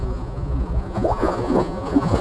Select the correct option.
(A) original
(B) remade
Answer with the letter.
B